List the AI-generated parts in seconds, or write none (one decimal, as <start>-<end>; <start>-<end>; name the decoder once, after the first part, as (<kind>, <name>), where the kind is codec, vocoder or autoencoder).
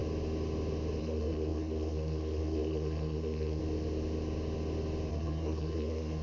1.0-3.6 (codec, SNAC); 5.1-6.2